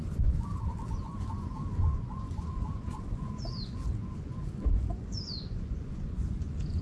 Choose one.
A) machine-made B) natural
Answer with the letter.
A